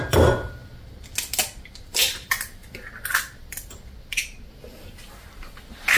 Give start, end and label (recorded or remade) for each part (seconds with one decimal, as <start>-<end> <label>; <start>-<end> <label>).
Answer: 0.0-0.6 remade; 0.6-1.6 recorded; 1.6-2.6 remade; 2.6-3.4 recorded; 3.4-4.2 remade; 4.2-6.0 recorded